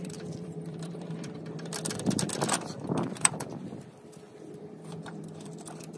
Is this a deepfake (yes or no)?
yes